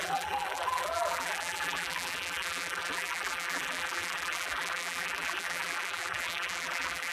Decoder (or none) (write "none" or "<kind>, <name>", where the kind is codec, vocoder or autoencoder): vocoder, BigVGAN v2